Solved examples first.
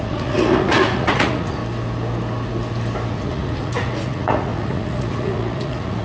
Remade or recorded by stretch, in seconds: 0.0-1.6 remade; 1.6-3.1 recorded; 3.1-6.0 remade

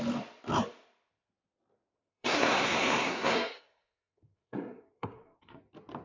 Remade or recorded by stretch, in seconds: 0.0-2.0 recorded; 2.0-5.6 remade; 5.6-6.0 recorded

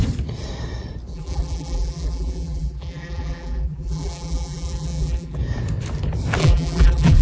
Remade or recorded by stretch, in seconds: 0.0-1.1 recorded; 1.1-5.4 remade; 5.4-6.4 recorded; 6.4-7.2 remade

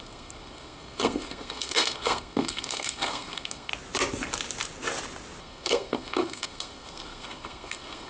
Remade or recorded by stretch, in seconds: 0.0-3.7 remade; 3.7-5.4 recorded; 5.4-8.1 remade